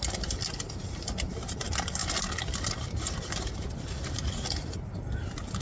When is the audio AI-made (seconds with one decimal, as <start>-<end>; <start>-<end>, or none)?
none